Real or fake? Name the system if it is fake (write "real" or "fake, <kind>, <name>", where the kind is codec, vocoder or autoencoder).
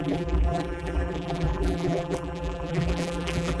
fake, vocoder, BigVGAN v2